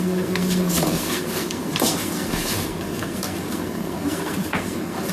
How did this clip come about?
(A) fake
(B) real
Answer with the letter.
A